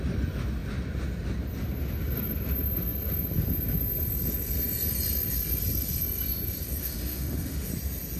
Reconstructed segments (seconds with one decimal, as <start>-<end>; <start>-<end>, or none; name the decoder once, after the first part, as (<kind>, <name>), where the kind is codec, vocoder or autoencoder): 6.8-7.7 (autoencoder, DAC-VAE)